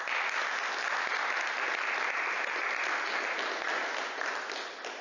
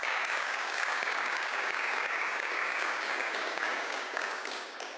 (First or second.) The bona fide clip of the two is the first